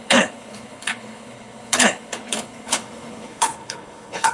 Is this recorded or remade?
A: remade